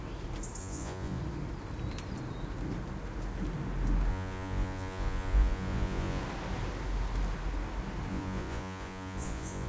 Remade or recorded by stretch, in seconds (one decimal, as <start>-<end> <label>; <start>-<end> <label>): 0.0-0.6 recorded; 0.6-1.2 remade; 1.2-4.1 recorded; 4.1-6.2 remade; 6.2-8.1 recorded; 8.1-9.7 remade